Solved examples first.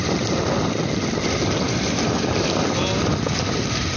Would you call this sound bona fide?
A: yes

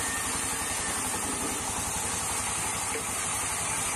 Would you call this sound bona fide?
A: yes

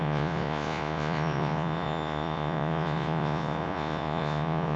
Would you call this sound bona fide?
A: no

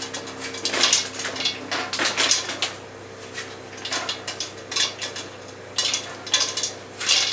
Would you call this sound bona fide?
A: yes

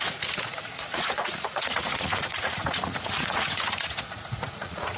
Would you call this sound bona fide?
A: no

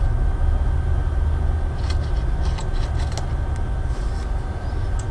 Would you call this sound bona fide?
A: yes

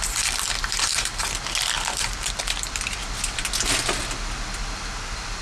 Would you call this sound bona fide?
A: yes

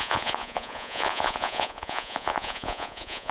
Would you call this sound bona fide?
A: no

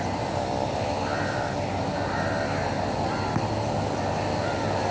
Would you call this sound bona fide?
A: yes